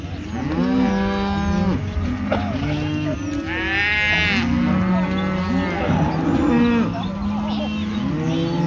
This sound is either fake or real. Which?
real